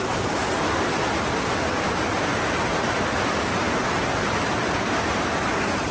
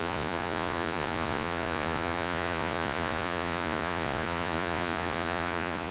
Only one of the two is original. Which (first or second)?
first